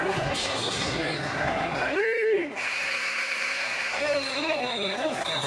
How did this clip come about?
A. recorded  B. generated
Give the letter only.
B